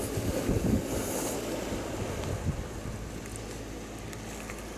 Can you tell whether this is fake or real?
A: real